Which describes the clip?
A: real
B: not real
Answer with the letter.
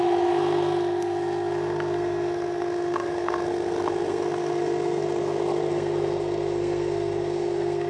B